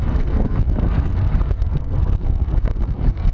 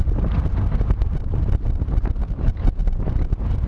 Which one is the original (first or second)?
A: second